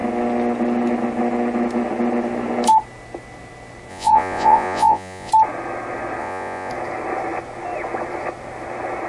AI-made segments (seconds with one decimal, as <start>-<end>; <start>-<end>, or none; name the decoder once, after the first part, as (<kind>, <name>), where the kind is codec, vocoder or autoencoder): 3.9-5.3 (vocoder, Vocos); 6.2-6.7